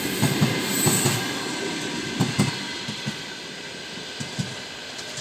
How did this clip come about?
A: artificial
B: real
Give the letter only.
B